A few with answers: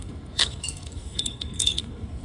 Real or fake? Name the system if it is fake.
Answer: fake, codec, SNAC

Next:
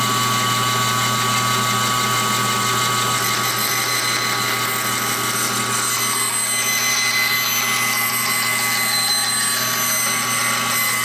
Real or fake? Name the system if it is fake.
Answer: real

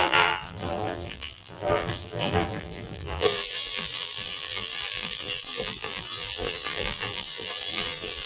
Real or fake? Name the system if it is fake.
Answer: fake, vocoder, BigVGAN v2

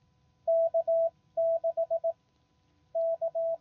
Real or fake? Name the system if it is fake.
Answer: real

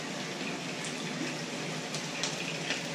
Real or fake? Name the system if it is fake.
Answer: real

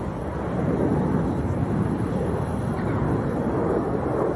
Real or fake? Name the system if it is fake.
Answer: real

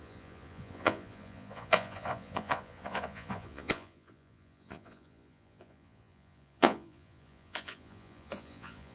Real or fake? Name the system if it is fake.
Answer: fake, vocoder, Vocos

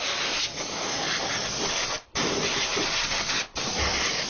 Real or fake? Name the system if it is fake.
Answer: real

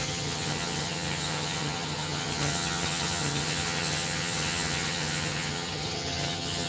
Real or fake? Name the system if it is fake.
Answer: fake, vocoder, HiFi-GAN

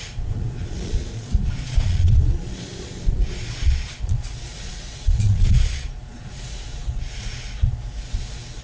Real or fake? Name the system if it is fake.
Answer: fake, vocoder, Vocos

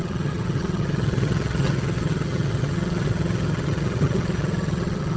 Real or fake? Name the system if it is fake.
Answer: fake, vocoder, HiFi-GAN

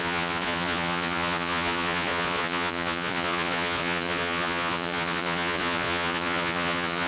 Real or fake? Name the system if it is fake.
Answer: fake, vocoder, Vocos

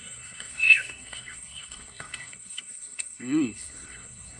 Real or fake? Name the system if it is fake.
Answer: fake, codec, SNAC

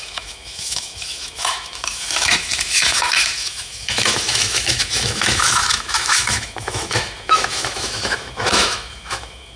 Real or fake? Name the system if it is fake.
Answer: fake, autoencoder, DAC-VAE